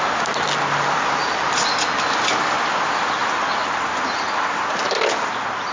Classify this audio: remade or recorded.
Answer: recorded